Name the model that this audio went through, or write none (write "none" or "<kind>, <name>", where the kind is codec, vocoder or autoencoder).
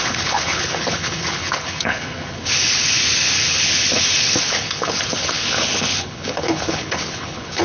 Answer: codec, HILCodec